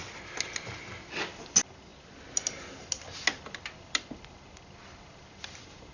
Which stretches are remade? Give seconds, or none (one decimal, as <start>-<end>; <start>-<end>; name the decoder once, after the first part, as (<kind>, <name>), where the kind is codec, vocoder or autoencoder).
none